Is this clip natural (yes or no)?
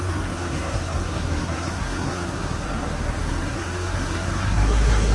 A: no